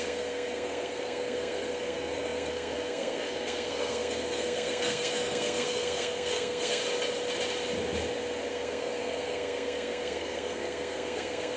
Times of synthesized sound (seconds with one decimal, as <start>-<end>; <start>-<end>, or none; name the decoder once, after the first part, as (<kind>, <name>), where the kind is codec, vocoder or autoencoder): 0.0-6.8 (codec, SNAC); 8.5-11.6